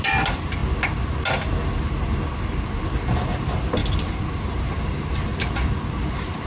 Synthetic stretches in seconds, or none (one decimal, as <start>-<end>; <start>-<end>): 0.0-0.6; 2.6-3.8; 4.4-5.3; 5.9-6.5